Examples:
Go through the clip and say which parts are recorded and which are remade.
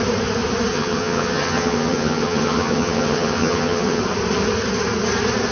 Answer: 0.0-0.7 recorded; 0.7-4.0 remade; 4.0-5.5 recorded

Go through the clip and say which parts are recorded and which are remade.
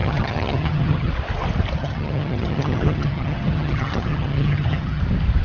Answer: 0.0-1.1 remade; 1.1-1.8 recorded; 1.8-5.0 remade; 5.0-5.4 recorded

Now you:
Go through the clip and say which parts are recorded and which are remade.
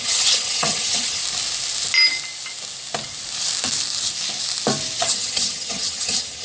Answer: 0.0-1.2 remade; 1.2-5.0 recorded; 5.0-6.4 remade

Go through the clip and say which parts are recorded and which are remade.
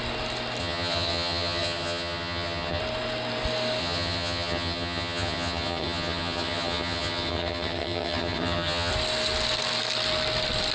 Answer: 0.0-0.6 recorded; 0.6-2.8 remade; 2.8-3.8 recorded; 3.8-8.9 remade; 8.9-10.7 recorded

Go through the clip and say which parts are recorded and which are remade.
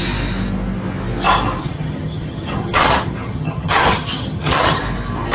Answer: 0.0-1.6 recorded; 1.6-4.8 remade; 4.8-5.3 recorded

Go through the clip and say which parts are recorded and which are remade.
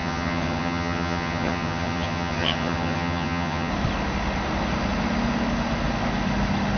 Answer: 0.0-3.7 remade; 3.7-6.8 recorded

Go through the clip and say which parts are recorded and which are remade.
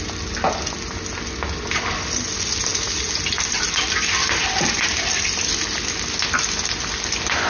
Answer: 0.0-7.5 recorded